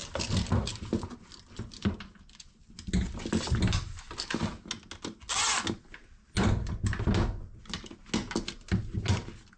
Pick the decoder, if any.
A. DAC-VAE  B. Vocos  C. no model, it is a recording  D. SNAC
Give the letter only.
C